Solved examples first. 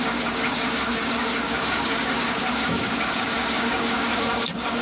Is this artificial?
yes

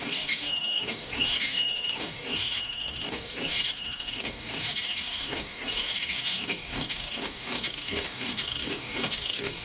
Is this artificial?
yes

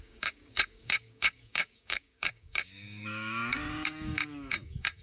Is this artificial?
yes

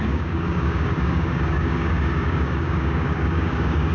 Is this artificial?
yes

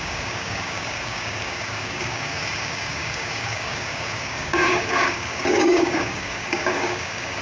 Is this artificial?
yes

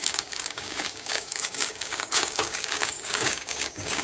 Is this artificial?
yes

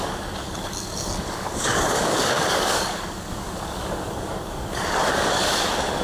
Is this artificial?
yes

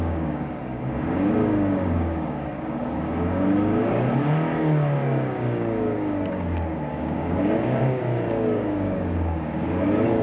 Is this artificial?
yes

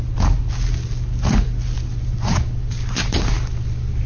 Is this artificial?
no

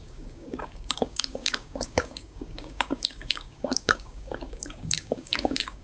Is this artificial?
yes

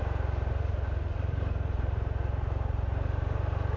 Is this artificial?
no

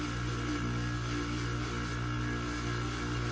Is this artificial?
no